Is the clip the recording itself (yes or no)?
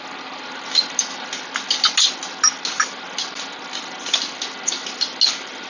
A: yes